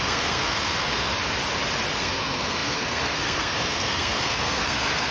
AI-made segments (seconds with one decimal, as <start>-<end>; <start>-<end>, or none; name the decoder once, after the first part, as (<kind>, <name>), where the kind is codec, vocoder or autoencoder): 0.0-1.1 (codec, SNAC); 2.0-5.1